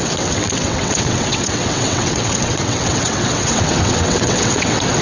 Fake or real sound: fake